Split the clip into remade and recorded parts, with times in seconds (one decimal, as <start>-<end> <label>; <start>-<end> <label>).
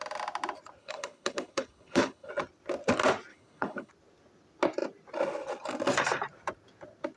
0.0-0.8 recorded; 0.8-2.3 remade; 2.3-3.3 recorded; 3.3-3.9 remade; 3.9-7.2 recorded